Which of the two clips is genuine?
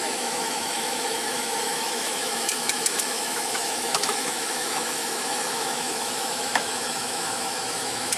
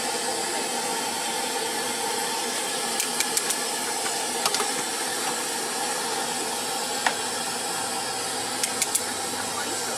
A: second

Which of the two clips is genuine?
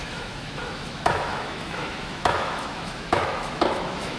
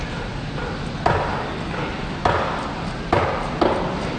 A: second